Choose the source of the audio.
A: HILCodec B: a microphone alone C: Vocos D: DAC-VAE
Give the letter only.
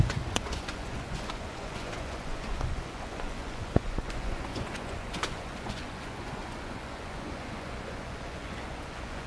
C